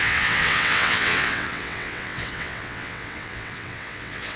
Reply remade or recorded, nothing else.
remade